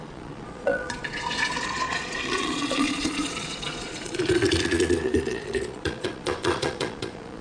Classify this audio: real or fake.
fake